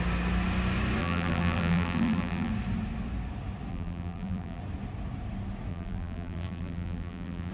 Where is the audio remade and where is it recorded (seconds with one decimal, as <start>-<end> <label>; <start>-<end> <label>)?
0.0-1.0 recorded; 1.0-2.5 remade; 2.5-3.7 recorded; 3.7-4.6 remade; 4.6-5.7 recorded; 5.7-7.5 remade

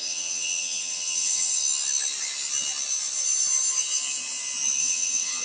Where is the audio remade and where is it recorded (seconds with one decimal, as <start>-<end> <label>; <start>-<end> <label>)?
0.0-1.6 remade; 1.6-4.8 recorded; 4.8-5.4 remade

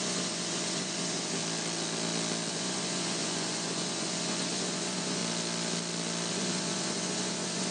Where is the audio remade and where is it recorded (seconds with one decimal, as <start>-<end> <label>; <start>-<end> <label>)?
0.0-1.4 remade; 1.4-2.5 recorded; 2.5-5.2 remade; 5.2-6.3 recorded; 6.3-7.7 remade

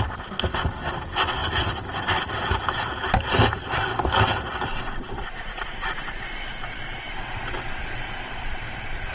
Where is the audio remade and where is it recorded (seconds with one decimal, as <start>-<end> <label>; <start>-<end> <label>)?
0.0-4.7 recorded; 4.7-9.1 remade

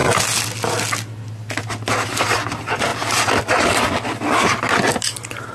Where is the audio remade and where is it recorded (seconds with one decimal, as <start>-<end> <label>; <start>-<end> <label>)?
0.0-5.5 recorded

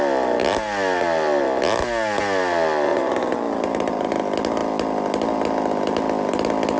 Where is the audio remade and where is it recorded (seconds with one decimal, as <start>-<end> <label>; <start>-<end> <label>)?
0.0-2.9 recorded; 2.9-4.1 remade; 4.1-6.8 recorded

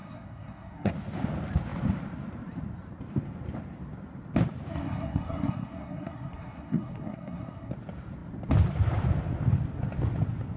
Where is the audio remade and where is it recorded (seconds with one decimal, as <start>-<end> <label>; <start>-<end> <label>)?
0.0-0.9 remade; 0.9-4.7 recorded; 4.7-7.7 remade; 7.7-10.6 recorded

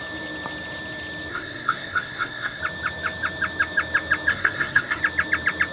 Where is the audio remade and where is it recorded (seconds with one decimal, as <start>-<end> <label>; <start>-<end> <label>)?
0.0-1.3 recorded; 1.3-2.6 remade; 2.6-4.3 recorded; 4.3-5.0 remade; 5.0-5.7 recorded